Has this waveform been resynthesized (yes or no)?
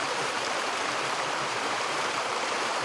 yes